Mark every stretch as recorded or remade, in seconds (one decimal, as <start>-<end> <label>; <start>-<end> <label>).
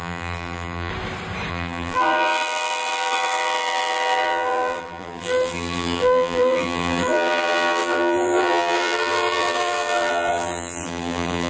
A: 0.0-0.9 remade; 0.9-1.5 recorded; 1.5-11.5 remade